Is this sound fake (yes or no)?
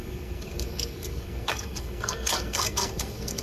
yes